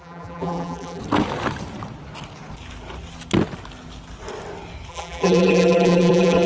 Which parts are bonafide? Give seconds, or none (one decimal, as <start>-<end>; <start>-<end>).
1.0-4.9

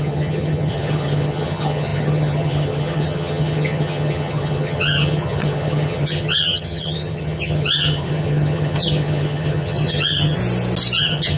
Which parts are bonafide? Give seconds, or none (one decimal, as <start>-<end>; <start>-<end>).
10.4-11.0

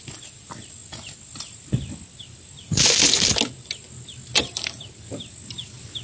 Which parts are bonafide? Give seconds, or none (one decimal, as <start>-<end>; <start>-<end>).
0.0-6.0

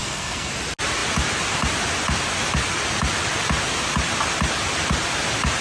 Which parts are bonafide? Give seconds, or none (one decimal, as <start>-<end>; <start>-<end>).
0.5-5.6